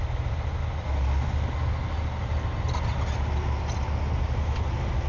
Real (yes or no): yes